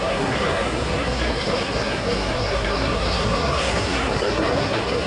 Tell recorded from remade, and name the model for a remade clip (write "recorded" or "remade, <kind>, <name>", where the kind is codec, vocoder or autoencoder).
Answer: remade, codec, SNAC